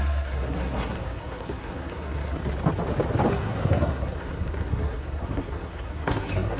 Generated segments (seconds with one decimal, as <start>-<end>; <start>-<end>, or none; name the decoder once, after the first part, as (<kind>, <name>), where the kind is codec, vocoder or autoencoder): 0.0-2.4 (codec, SNAC); 3.3-6.6